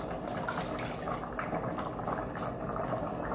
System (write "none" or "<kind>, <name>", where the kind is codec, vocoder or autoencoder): none